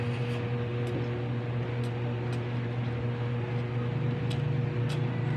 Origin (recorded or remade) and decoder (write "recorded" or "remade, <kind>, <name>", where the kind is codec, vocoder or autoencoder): recorded